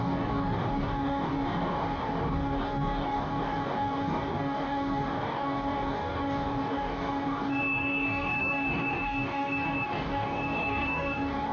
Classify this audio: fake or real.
fake